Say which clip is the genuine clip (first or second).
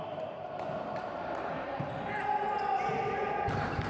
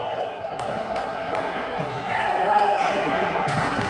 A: first